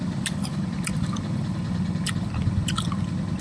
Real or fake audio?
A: real